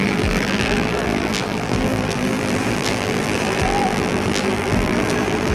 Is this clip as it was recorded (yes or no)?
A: no